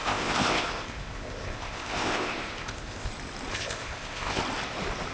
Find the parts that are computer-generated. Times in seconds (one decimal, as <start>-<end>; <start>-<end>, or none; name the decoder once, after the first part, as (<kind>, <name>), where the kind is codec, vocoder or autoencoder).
0.0-3.1 (codec, ZipCodec); 3.5-4.4